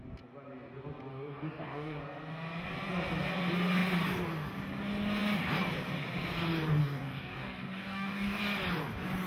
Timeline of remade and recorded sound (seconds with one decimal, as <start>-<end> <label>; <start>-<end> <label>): 0.0-1.1 recorded; 1.1-2.0 remade; 2.0-6.8 recorded; 6.8-8.4 remade; 8.4-9.3 recorded